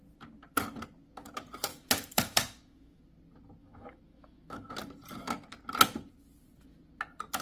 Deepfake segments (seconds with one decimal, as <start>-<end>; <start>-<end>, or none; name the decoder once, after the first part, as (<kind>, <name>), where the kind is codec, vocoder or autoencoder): 1.7-3.0 (autoencoder, DAC-VAE); 3.6-4.7